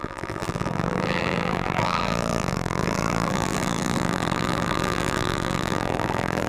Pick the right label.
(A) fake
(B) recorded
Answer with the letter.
A